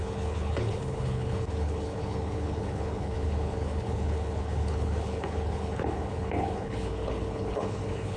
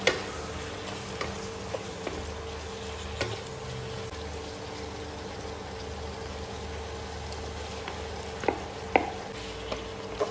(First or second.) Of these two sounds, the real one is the second